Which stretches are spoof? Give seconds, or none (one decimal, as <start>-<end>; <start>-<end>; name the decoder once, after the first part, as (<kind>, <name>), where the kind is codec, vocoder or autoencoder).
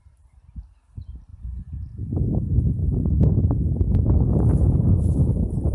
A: 1.3-1.9 (vocoder, Vocos)